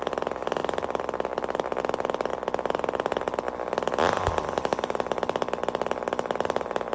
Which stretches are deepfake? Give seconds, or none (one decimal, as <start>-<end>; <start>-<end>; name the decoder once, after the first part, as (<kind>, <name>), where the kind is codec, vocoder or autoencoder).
none

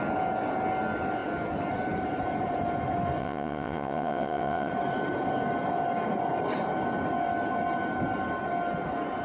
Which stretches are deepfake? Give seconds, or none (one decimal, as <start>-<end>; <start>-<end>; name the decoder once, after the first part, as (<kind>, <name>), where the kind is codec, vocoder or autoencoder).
3.2-4.7 (vocoder, WaveNeXt)

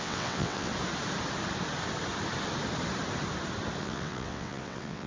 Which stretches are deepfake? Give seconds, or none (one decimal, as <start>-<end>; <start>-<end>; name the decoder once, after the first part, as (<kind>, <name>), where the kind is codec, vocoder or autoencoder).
0.0-0.7 (vocoder, WaveNeXt); 3.8-5.1

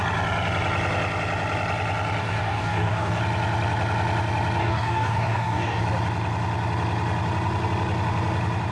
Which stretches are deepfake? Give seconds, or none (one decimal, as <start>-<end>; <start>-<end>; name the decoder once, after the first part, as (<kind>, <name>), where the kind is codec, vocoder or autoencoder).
2.2-3.2 (codec, DAC); 4.6-5.8

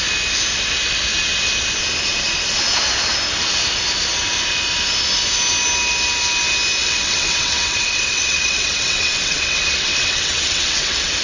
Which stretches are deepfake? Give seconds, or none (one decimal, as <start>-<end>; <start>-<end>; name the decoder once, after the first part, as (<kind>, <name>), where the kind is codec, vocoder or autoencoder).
6.8-11.2 (vocoder, WaveNeXt)

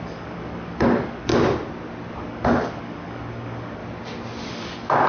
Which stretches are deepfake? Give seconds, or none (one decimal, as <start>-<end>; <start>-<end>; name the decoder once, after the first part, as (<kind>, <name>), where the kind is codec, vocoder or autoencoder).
0.0-1.3 (codec, DAC); 2.2-3.8; 4.5-5.1

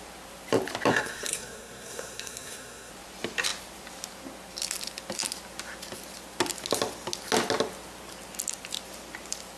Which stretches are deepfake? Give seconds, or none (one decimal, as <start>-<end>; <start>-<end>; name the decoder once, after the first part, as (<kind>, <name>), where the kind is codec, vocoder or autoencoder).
0.9-2.9 (codec, SNAC)

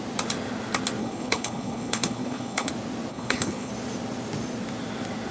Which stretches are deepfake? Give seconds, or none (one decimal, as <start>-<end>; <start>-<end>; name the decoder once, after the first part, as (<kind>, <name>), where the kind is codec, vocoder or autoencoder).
1.0-2.7 (codec, HILCodec); 3.1-3.7